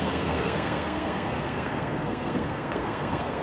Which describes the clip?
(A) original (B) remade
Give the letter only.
B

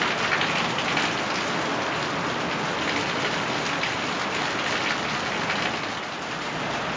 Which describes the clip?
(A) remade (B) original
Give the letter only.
B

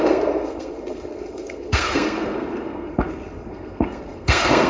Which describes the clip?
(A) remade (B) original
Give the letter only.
A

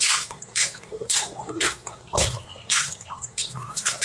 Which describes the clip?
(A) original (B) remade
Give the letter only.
B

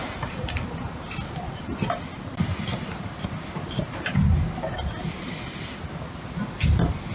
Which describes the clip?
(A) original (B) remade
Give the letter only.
A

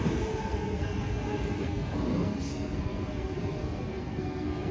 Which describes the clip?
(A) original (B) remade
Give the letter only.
B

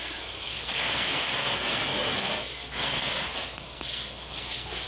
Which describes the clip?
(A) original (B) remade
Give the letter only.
B